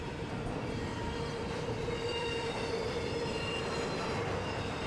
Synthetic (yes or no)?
yes